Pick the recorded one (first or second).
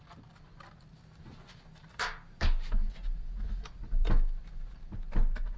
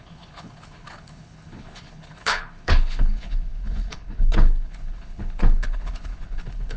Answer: first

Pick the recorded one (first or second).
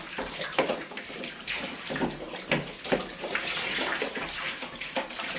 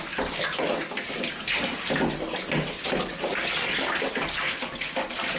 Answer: second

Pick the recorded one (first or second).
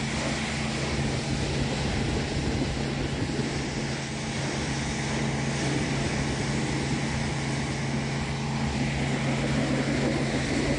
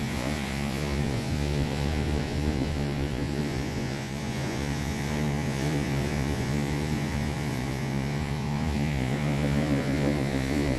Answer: first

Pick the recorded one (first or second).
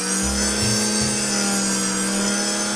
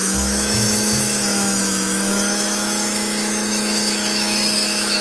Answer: first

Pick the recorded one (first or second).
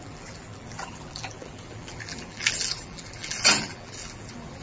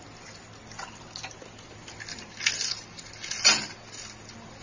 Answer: second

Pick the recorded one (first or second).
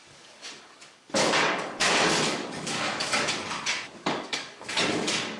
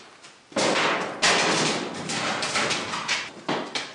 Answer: second